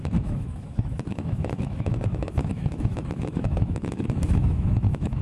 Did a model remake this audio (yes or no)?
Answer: yes